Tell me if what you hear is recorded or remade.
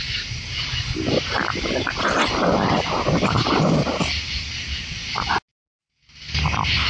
recorded